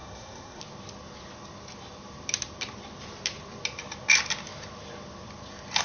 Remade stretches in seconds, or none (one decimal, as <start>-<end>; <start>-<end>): 0.0-0.6